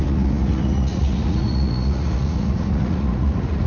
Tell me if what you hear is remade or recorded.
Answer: remade